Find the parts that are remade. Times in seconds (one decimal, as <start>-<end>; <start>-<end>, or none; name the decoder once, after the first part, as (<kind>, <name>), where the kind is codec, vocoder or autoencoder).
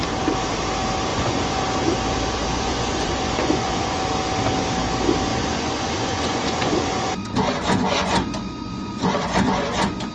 1.1-1.6 (vocoder, Vocos); 2.5-4.0; 5.3-10.1